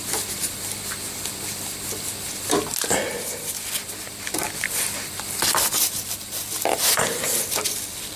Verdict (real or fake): real